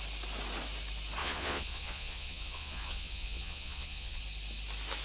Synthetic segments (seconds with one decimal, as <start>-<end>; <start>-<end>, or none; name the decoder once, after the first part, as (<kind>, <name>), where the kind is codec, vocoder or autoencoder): 1.2-4.2 (vocoder, Vocos)